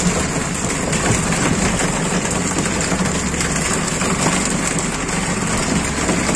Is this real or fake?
real